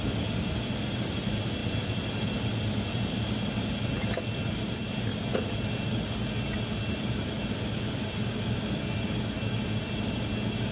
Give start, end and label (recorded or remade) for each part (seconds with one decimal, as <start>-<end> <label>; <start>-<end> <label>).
0.0-10.7 recorded